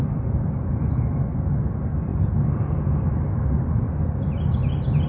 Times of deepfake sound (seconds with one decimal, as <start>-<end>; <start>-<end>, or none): none